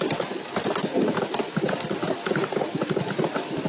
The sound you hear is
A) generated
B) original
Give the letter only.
B